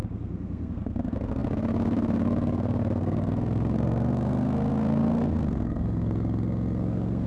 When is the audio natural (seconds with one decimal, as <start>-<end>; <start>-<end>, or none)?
none